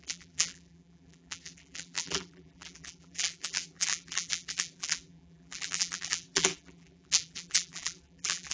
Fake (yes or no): yes